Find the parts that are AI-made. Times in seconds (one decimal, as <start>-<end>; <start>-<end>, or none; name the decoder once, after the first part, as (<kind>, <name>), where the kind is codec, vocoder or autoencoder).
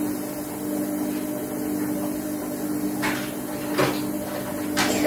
none